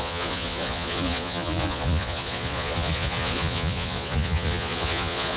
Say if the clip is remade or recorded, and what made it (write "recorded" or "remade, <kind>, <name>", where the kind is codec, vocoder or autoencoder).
remade, vocoder, Vocos